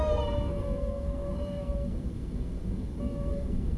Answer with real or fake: fake